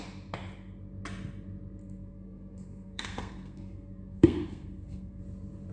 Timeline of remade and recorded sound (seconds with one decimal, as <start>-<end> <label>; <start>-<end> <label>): 0.0-1.8 recorded; 1.8-5.2 remade; 5.2-5.7 recorded